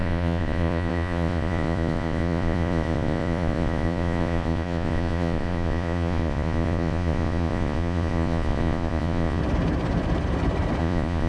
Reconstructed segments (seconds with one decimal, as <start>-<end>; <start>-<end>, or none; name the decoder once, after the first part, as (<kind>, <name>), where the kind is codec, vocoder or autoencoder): 0.0-9.4 (vocoder, Vocos); 10.8-11.3